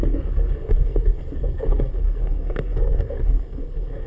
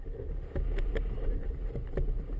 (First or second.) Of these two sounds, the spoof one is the first